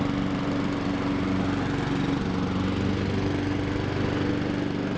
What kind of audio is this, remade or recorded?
recorded